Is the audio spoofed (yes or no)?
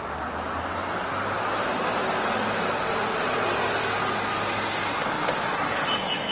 no